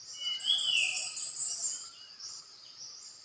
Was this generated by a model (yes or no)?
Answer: no